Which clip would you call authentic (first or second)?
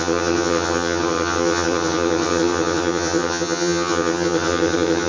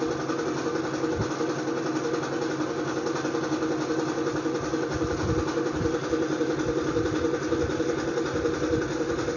second